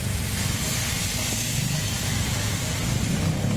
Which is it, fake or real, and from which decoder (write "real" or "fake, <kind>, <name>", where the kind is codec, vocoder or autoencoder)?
real